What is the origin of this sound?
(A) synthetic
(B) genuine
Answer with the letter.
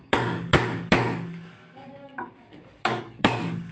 A